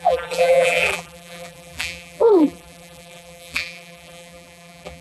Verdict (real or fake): fake